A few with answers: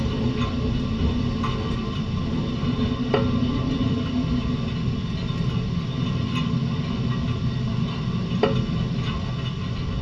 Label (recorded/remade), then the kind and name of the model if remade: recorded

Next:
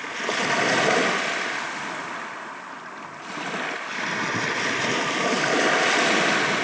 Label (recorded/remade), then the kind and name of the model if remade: recorded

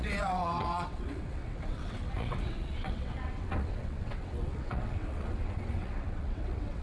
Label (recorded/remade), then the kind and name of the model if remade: remade, vocoder, WaveNeXt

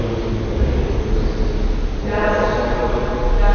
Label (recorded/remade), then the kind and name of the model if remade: recorded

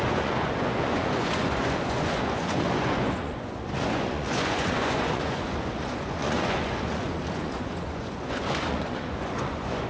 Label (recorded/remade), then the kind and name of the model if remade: remade, vocoder, Vocos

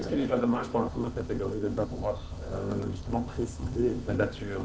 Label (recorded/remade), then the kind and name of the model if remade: remade, codec, ZipCodec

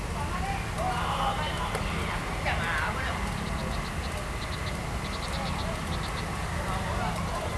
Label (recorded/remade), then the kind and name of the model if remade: recorded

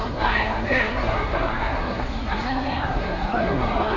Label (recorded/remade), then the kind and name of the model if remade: remade, codec, SNAC